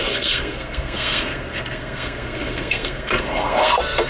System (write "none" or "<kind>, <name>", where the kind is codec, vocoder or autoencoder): codec, SNAC